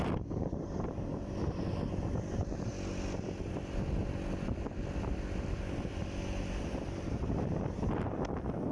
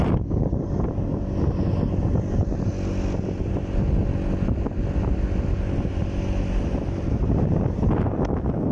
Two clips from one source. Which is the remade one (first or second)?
first